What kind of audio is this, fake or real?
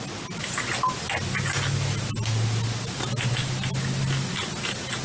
real